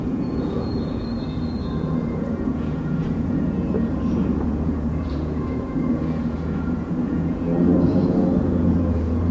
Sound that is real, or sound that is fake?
fake